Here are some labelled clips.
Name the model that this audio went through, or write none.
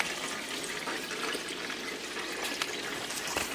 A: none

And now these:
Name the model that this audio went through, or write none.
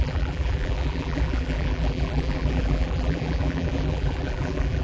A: vocoder, BigVGAN v2